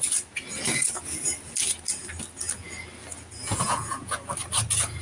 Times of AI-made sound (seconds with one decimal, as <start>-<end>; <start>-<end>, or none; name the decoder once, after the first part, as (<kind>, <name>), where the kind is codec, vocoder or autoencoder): 3.5-4.1 (vocoder, Vocos)